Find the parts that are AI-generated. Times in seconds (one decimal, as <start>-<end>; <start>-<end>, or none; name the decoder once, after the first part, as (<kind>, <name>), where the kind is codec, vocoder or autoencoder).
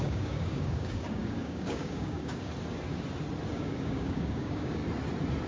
0.0-2.5 (codec, DAC); 3.5-4.8